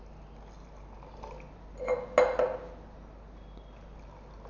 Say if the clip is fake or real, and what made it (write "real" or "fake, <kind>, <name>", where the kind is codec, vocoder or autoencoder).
real